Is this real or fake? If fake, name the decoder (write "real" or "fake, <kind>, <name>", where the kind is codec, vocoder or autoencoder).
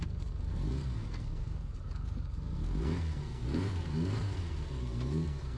fake, codec, SNAC